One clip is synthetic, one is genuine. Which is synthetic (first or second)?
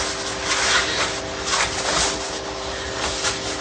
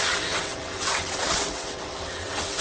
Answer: second